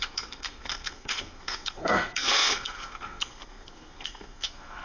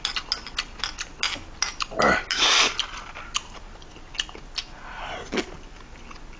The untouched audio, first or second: second